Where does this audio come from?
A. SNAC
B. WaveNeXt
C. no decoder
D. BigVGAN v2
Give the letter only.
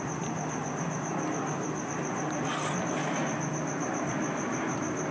C